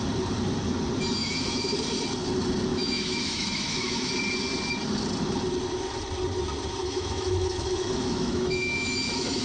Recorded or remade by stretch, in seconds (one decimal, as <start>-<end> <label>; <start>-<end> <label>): 0.0-1.2 recorded; 1.2-1.7 remade; 1.7-2.7 recorded; 2.7-4.1 remade; 4.1-6.8 recorded; 6.8-9.4 remade